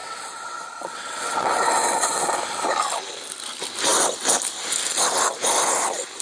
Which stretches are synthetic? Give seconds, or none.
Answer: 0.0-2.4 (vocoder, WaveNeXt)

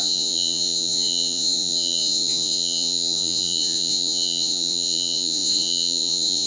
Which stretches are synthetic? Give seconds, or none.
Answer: 0.0-6.5 (vocoder, Vocos)

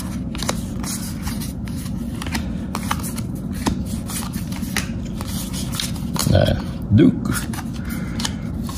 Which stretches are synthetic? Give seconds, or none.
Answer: none